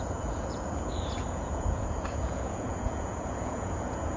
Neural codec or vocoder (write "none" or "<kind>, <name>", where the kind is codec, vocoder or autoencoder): vocoder, Vocos